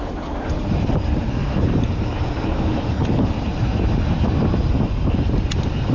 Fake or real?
fake